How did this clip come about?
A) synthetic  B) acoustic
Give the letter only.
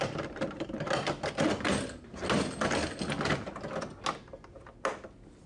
B